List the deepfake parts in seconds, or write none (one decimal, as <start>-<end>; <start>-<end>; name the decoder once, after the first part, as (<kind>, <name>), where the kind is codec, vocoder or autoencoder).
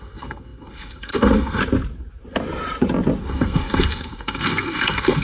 0.0-1.6 (codec, SNAC); 3.2-5.2